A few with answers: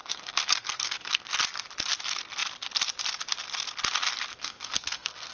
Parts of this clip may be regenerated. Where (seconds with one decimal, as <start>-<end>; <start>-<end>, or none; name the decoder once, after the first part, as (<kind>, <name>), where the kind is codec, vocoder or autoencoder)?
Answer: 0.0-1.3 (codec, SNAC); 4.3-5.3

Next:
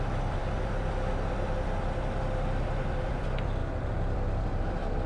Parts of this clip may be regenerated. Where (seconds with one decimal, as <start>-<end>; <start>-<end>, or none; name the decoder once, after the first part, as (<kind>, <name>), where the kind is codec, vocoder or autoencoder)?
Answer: 0.0-5.1 (vocoder, BigVGAN v2)

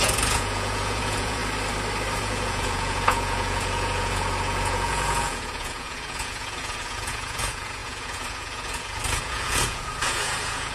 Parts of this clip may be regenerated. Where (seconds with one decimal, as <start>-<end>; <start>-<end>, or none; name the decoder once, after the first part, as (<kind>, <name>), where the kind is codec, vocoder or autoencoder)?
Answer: 0.0-1.4 (vocoder, Vocos); 2.2-10.7